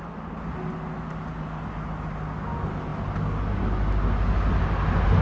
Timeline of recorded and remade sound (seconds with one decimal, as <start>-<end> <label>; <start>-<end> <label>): 0.0-5.2 recorded